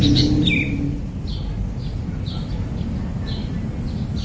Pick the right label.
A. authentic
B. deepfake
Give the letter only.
A